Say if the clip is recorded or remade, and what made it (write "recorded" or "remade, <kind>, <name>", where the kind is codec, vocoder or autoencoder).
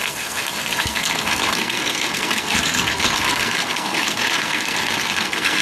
remade, codec, SNAC